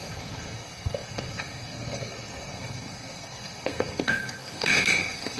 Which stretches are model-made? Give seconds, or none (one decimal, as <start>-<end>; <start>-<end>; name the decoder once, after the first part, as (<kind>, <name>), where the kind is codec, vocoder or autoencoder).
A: 0.0-5.4 (codec, SNAC)